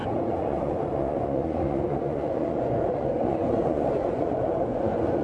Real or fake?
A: fake